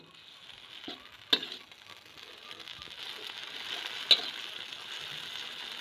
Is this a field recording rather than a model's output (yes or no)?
yes